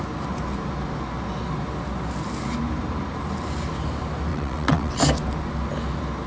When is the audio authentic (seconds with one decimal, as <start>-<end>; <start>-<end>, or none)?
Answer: 0.0-4.3; 5.0-6.3